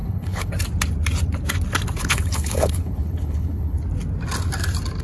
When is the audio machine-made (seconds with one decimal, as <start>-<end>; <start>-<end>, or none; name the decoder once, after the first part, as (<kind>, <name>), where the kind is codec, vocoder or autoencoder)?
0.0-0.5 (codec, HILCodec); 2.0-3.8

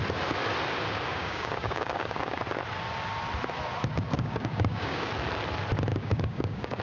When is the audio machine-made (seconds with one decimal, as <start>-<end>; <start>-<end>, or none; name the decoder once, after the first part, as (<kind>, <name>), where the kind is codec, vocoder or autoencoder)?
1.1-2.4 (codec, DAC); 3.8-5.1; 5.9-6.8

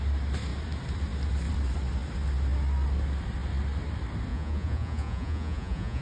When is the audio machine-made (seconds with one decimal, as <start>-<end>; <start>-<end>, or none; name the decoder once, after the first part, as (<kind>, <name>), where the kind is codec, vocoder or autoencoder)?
4.3-6.0 (vocoder, Vocos)

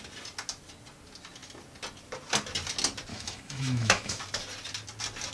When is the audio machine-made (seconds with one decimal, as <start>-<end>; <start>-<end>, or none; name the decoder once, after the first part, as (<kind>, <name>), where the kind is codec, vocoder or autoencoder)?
3.1-4.2 (autoencoder, DAC-VAE)